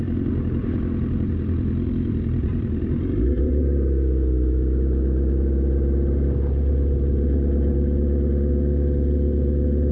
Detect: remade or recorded remade